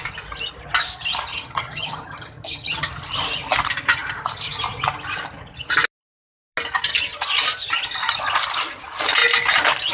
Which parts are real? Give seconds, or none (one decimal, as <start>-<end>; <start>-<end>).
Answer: 0.0-1.3; 2.9-9.9

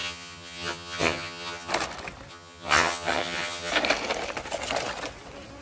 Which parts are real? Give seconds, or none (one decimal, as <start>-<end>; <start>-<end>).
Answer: 1.7-2.3; 3.7-5.6